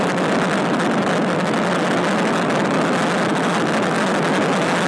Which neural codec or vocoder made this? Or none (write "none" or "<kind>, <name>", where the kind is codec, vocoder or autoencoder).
none